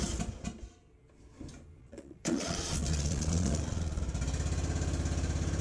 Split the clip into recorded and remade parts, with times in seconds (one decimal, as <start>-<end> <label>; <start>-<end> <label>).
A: 0.0-1.8 recorded; 1.8-4.0 remade; 4.0-5.6 recorded

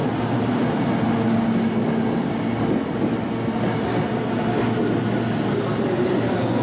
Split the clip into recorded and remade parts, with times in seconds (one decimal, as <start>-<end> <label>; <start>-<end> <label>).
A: 0.0-6.6 recorded

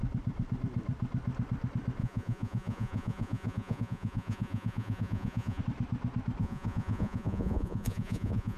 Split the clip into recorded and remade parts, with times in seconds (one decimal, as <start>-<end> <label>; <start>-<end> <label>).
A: 0.0-2.0 recorded; 2.0-5.6 remade; 5.6-6.4 recorded; 6.4-8.6 remade

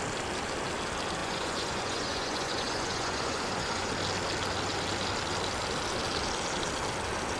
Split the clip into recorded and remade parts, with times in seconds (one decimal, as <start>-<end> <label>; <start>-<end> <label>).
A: 0.0-1.2 recorded; 1.2-3.9 remade; 3.9-7.4 recorded

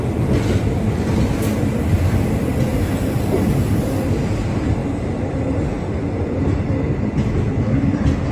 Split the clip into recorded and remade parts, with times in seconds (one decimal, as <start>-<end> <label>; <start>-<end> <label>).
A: 0.0-8.3 recorded

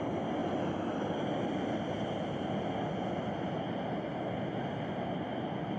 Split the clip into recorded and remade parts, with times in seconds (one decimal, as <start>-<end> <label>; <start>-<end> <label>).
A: 0.0-5.8 recorded

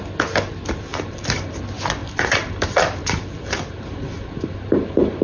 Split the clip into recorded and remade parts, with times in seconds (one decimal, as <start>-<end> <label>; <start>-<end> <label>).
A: 0.0-0.9 recorded; 0.9-1.6 remade; 1.6-2.0 recorded; 2.0-5.2 remade